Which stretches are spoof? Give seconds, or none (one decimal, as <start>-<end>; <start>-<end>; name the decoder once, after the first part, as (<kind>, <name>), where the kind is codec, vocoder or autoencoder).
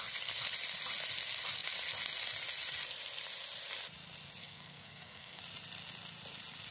4.4-5.4 (codec, SNAC)